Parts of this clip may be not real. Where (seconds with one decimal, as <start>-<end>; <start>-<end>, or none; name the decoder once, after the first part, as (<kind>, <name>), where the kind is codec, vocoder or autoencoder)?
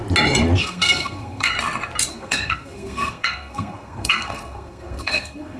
0.6-1.5 (codec, SNAC); 2.1-5.6